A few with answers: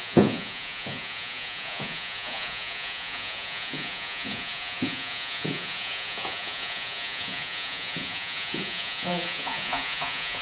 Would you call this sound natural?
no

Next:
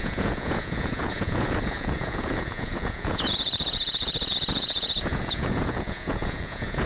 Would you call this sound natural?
no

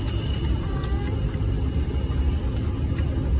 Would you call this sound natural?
yes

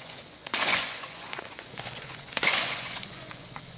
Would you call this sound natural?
no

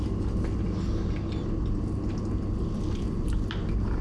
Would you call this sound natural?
yes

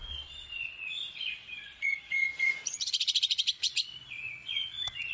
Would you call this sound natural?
no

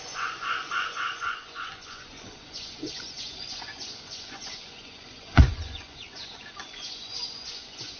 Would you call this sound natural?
no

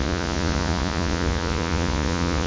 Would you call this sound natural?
no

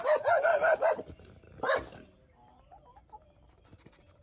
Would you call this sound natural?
yes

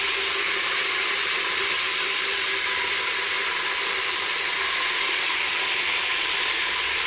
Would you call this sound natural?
yes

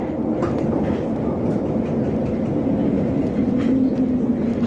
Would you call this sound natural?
yes